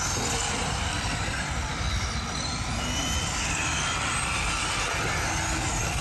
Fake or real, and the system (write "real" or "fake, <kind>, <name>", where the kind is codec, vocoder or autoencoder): real